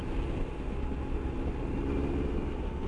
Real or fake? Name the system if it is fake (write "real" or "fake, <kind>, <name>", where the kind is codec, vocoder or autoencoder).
real